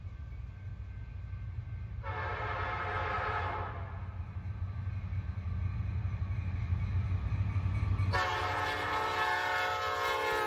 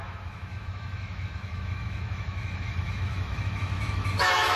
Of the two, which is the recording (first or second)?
first